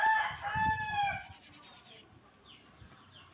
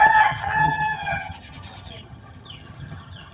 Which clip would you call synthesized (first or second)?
second